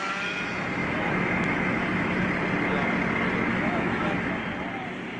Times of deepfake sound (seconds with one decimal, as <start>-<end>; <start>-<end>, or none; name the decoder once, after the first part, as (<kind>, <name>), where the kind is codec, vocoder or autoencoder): 0.8-2.3 (autoencoder, DAC-VAE); 3.5-4.4